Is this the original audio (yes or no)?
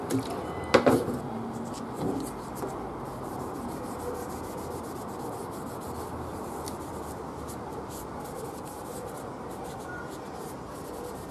yes